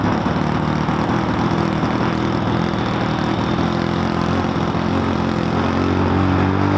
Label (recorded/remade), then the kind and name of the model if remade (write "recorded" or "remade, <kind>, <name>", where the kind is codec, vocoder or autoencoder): recorded